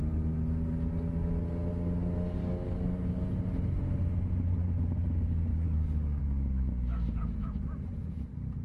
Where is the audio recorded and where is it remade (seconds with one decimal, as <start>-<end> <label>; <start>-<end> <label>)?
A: 0.0-2.4 recorded; 2.4-3.3 remade; 3.3-5.5 recorded; 5.5-6.2 remade; 6.2-8.6 recorded